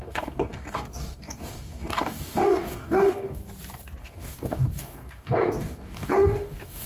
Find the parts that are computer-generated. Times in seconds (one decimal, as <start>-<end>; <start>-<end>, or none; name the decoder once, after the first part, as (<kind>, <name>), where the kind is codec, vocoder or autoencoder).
0.0-3.4 (codec, DAC); 4.0-6.9